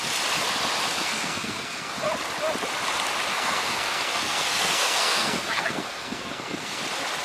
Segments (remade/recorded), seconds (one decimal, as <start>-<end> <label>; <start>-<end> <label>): 0.0-0.9 recorded; 0.9-2.0 remade; 2.0-3.3 recorded; 3.3-6.8 remade; 6.8-7.2 recorded